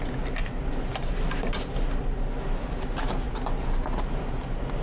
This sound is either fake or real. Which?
real